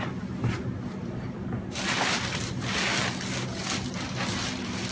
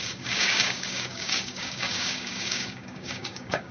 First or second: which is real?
first